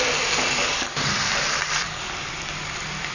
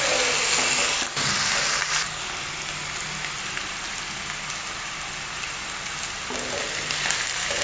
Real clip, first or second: second